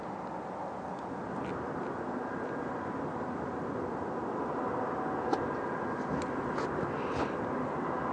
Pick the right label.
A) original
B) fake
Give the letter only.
A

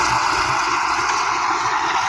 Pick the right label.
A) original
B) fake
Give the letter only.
B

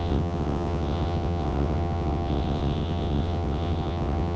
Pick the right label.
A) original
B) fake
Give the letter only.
B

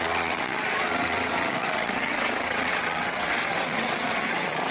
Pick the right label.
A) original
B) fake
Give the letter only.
B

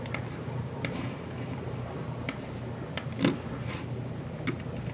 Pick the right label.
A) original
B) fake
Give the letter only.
A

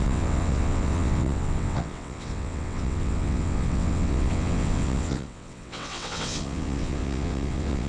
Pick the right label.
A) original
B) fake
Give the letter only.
B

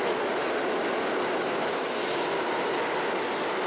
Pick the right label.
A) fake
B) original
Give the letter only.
B